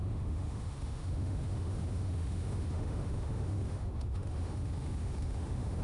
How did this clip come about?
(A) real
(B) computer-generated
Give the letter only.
B